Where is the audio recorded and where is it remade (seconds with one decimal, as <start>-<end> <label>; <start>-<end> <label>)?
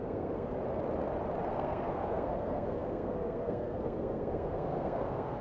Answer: 0.0-0.6 remade; 0.6-1.5 recorded; 1.5-5.4 remade